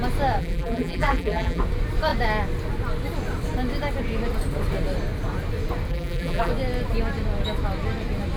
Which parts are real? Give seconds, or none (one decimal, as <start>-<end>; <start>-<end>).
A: 0.0-0.4; 1.6-5.9; 6.5-8.4